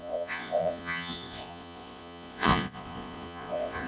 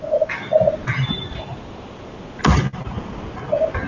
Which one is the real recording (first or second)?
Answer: second